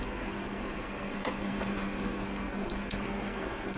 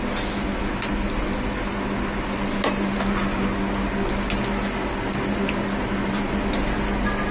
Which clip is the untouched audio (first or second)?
second